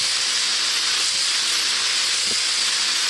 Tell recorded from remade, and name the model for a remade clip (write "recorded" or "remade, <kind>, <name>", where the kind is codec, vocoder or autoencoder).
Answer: recorded